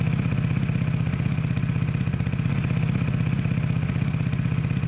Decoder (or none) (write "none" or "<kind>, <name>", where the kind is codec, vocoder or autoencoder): none